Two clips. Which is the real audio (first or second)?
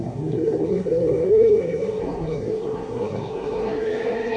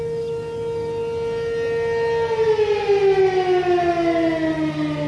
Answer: second